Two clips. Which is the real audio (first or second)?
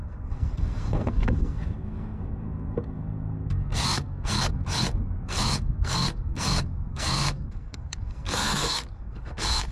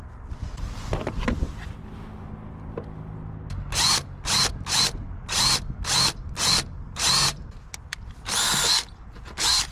second